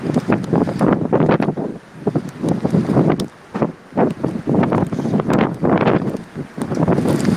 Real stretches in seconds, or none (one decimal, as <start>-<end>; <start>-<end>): 0.0-7.4